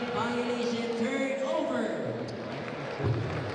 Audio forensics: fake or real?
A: real